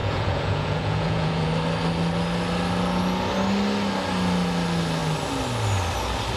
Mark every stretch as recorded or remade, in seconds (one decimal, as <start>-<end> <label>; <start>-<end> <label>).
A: 0.0-1.5 remade; 1.5-6.4 recorded